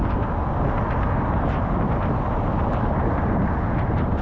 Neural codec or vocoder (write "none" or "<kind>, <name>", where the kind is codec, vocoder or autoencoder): none